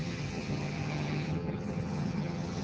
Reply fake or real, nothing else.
fake